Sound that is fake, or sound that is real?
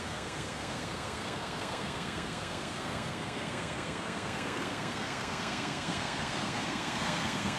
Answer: fake